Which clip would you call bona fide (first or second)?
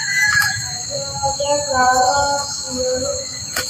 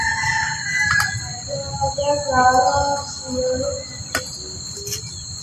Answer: second